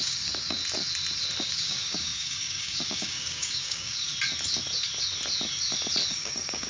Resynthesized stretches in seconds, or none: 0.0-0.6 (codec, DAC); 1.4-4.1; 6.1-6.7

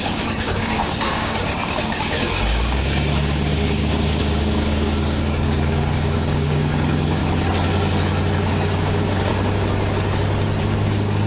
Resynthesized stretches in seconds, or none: 0.0-7.2 (codec, DAC); 8.5-9.3; 10.6-11.3

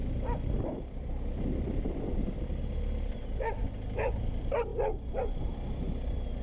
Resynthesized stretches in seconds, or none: none

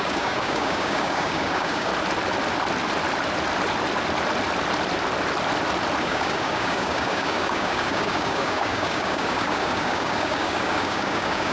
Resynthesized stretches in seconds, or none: 0.0-1.9 (codec, DAC); 6.0-11.5

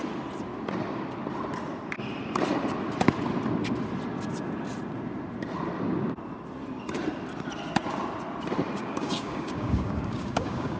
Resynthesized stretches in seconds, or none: 8.8-10.8 (codec, DAC)

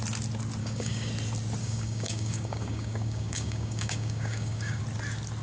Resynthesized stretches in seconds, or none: 0.6-1.1 (codec, DAC); 1.6-4.8

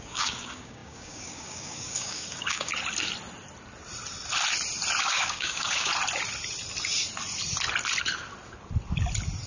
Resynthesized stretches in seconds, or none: 0.0-2.7 (codec, DAC); 5.0-5.9

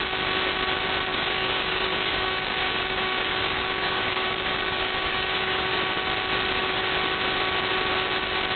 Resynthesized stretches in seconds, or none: 1.1-5.7 (codec, DAC)